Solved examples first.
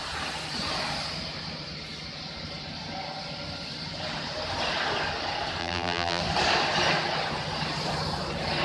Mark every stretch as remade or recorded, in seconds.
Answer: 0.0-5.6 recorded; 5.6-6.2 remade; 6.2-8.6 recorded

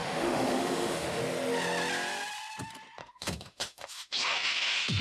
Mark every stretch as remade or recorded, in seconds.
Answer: 0.0-1.2 remade; 1.2-3.0 recorded; 3.0-5.0 remade

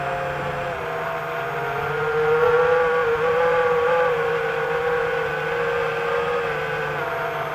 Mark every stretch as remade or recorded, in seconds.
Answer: 0.0-3.0 recorded; 3.0-5.3 remade; 5.3-7.5 recorded

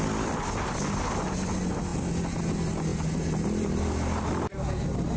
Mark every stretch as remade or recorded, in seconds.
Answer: 0.0-5.2 recorded

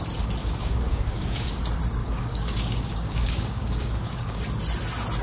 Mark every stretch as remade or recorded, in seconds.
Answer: 0.0-0.4 recorded; 0.4-1.6 remade; 1.6-2.0 recorded; 2.0-4.4 remade; 4.4-5.2 recorded

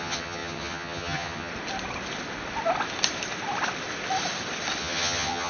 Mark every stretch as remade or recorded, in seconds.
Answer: 0.0-1.5 remade; 1.5-4.8 recorded; 4.8-5.5 remade

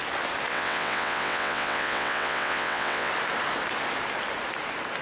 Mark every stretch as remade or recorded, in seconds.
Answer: 0.0-0.5 recorded; 0.5-3.1 remade; 3.1-5.0 recorded